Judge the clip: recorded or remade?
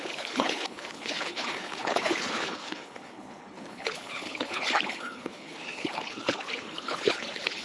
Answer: remade